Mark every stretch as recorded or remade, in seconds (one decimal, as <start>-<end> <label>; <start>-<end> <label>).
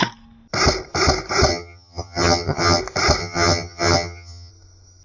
0.0-1.5 recorded; 1.5-2.8 remade; 2.8-3.2 recorded; 3.2-4.5 remade; 4.5-5.0 recorded